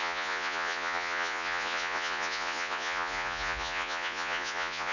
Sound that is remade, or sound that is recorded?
remade